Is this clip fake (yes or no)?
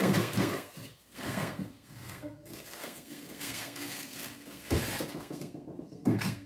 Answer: yes